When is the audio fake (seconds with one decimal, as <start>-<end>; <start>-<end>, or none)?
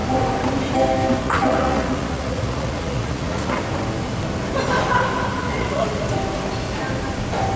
1.2-3.6; 5.4-6.0